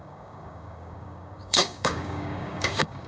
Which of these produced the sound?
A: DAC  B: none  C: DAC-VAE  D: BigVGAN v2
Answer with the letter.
A